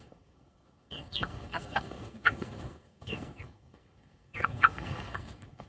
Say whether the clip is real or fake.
fake